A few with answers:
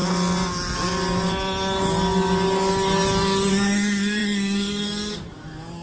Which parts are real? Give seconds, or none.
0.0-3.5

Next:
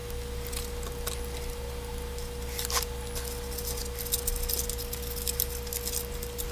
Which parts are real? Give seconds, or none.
0.0-6.5

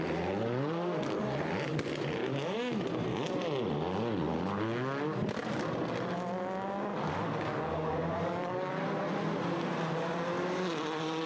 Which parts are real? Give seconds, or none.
0.0-2.2; 2.8-6.9; 8.7-11.3

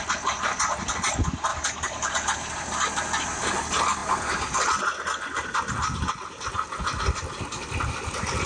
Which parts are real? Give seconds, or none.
0.0-1.5; 2.1-8.5

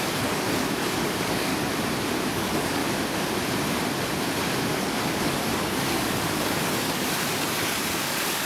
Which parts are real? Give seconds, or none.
1.5-2.3; 2.8-4.8

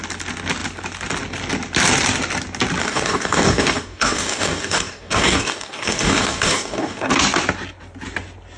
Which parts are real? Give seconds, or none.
0.0-2.8; 7.1-8.6